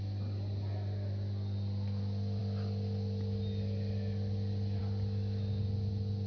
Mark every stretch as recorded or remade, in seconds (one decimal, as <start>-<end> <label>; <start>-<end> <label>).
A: 0.0-6.3 recorded